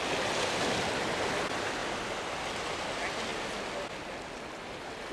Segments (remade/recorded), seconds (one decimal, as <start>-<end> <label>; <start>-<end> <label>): 0.0-5.1 recorded

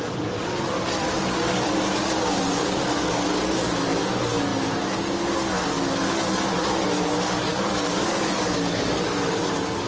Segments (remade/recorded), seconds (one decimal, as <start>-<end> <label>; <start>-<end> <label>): 0.0-2.6 recorded; 2.6-3.7 remade; 3.7-7.5 recorded; 7.5-9.4 remade; 9.4-9.9 recorded

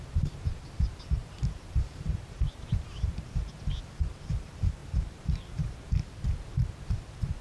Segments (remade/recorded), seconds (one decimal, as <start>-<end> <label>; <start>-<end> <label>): 0.0-1.2 recorded; 1.2-3.1 remade; 3.1-4.8 recorded; 4.8-5.9 remade; 5.9-7.4 recorded

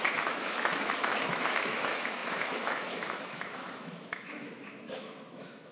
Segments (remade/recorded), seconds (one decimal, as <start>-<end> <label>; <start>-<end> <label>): 0.0-5.7 remade

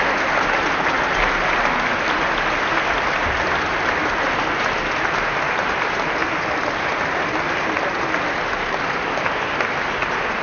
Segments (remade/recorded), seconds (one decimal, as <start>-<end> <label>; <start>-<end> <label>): 0.0-10.4 recorded

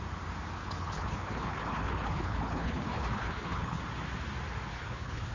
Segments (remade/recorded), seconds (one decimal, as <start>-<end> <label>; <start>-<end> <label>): 0.0-0.6 recorded; 0.6-3.8 remade; 3.8-4.7 recorded; 4.7-5.3 remade